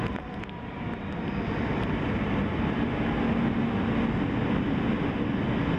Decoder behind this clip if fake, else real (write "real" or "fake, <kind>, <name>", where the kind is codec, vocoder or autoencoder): real